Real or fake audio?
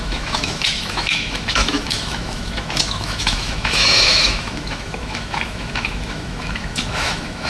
fake